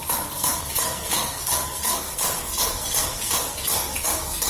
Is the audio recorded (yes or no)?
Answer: no